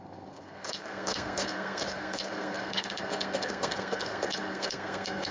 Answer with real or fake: fake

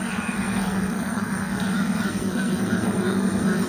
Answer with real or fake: fake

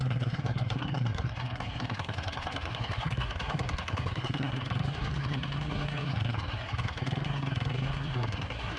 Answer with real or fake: fake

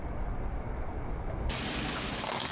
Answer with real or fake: real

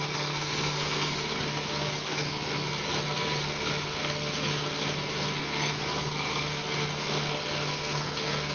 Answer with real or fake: fake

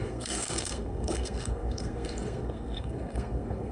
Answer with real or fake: fake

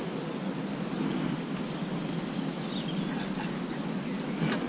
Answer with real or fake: real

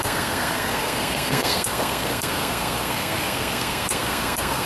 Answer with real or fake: fake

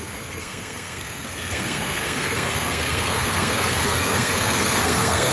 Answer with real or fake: fake